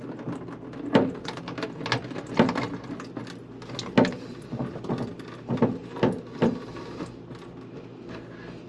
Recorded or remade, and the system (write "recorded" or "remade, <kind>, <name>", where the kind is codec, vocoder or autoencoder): recorded